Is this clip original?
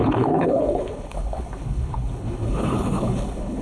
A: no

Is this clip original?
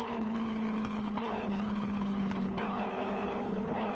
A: no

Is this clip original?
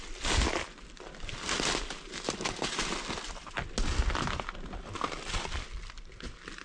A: yes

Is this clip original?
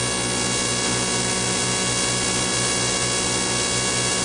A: yes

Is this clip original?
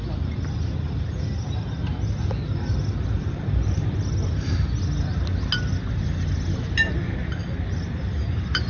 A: yes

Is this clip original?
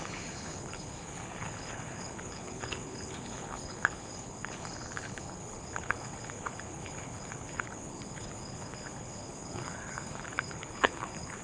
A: no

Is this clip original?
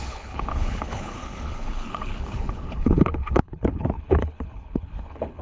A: no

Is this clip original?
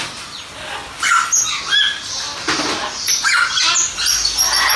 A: yes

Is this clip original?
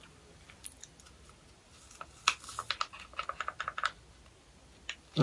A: yes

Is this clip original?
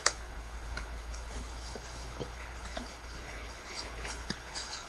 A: no